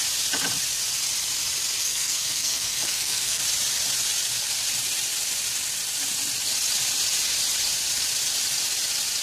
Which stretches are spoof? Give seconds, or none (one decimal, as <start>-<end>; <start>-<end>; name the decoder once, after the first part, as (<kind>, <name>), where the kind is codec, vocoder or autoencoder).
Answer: 1.8-3.4 (codec, SNAC)